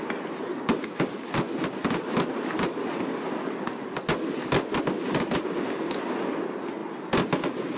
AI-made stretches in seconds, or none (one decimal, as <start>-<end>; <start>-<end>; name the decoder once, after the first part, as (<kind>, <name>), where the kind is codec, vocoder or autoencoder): none